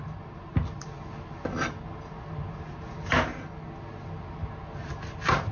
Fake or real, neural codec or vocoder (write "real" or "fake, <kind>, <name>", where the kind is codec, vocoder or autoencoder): real